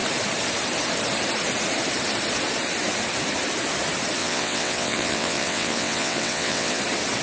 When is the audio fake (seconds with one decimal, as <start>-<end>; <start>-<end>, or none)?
4.2-6.8